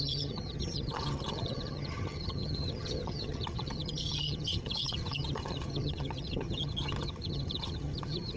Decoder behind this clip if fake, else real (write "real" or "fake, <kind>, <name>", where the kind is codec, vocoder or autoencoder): fake, vocoder, HiFi-GAN